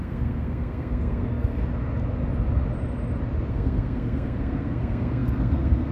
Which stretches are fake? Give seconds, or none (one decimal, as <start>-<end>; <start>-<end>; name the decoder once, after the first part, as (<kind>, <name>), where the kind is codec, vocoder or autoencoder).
0.0-1.6 (codec, SNAC); 3.5-5.9